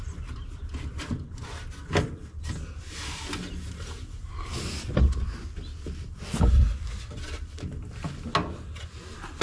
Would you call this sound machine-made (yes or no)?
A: no